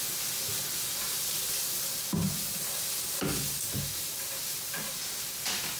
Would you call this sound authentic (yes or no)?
yes